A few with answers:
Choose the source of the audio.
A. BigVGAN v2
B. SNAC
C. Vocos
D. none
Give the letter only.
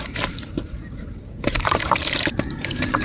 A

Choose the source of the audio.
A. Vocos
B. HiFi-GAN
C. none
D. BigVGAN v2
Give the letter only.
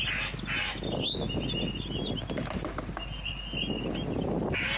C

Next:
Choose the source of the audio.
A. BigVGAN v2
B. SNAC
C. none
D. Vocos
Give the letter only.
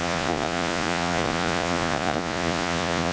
D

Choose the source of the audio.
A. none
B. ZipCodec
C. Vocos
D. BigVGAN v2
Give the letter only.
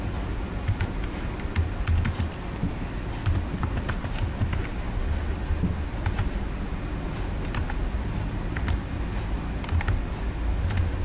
A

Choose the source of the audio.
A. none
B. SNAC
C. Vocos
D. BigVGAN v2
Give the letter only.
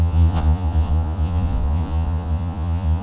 C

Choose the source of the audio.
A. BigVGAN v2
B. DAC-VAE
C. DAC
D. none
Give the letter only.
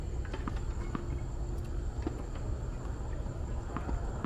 D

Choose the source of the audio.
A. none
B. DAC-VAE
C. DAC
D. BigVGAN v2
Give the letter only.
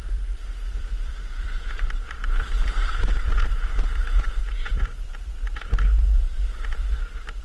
D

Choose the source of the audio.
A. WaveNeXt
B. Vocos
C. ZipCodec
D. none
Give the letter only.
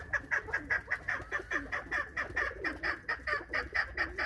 D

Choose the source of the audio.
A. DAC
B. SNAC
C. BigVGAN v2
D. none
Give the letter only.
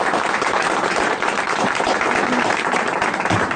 C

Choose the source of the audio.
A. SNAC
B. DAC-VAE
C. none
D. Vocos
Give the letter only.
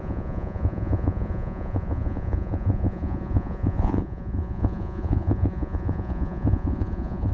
D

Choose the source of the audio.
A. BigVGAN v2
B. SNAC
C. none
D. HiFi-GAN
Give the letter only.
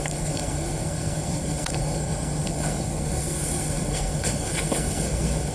B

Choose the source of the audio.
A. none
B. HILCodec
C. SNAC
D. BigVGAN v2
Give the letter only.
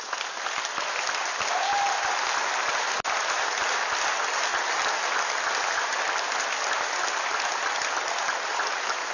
A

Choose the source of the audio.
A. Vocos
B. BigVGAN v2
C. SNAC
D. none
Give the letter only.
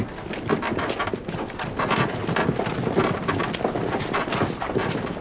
D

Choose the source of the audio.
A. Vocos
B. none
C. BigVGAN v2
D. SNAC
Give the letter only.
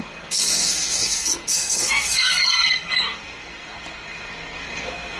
D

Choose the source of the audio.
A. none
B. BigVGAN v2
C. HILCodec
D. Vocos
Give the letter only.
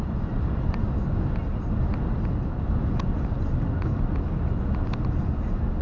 A